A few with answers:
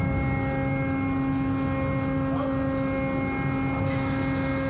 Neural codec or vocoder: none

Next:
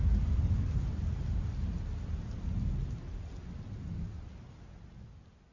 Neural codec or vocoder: none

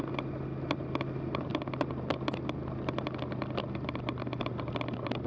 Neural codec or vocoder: none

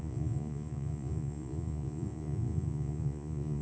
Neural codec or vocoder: vocoder, Vocos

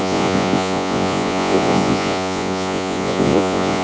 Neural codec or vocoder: vocoder, Vocos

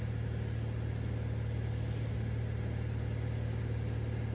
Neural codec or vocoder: none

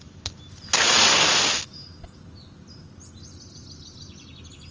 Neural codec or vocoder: none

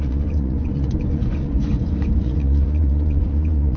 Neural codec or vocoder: vocoder, Vocos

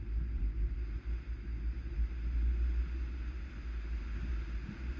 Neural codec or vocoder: none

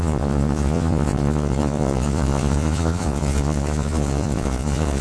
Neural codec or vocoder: vocoder, Vocos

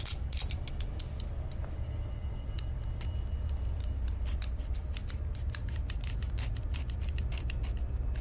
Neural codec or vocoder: none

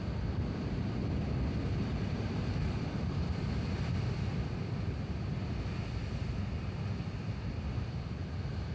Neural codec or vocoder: none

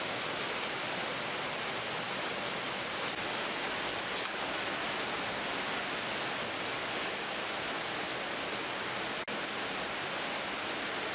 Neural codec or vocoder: none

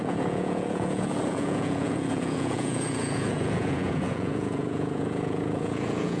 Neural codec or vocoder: vocoder, Vocos